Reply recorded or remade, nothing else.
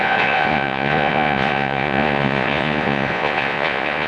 remade